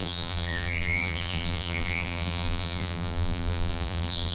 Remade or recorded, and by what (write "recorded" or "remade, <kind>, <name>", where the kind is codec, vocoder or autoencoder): remade, vocoder, BigVGAN v2